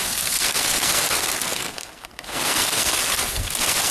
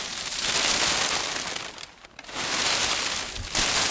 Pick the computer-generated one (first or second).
first